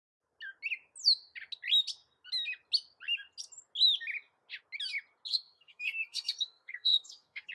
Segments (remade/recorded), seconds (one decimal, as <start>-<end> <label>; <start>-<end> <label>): 0.0-5.3 recorded; 5.3-7.5 remade